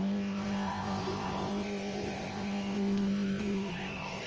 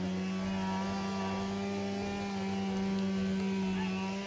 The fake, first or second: first